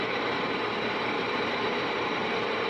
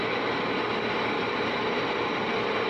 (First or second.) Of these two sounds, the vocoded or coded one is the first